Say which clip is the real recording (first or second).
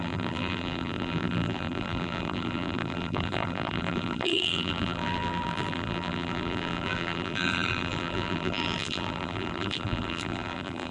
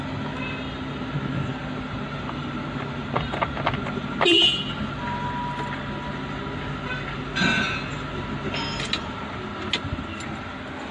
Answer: second